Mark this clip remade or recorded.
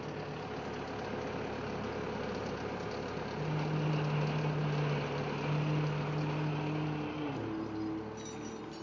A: recorded